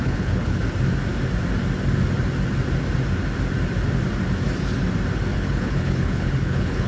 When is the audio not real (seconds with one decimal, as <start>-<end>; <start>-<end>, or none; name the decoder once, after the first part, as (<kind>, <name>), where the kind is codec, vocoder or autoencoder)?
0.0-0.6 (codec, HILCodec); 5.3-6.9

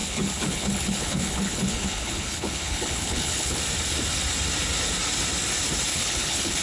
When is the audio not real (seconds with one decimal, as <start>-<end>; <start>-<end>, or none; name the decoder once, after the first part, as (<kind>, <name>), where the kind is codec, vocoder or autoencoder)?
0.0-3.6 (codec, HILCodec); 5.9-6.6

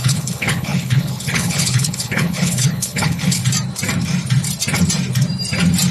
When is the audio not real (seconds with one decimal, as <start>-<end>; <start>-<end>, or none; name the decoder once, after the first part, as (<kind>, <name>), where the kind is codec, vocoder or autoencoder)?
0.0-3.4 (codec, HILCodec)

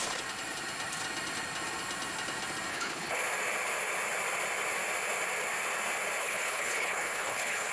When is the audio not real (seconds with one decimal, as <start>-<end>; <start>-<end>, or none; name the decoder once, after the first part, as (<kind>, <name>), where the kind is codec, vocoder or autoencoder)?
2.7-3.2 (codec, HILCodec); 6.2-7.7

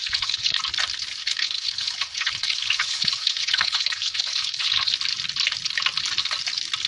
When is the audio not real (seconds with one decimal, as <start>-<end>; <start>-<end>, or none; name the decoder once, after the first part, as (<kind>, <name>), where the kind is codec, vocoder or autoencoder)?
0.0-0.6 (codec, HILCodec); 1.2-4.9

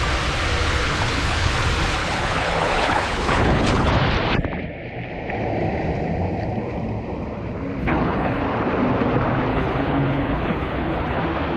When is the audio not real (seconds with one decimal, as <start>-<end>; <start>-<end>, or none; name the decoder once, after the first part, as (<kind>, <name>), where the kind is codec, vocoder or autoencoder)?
0.6-1.5 (codec, HILCodec); 2.0-3.9; 7.8-8.4; 9.5-11.2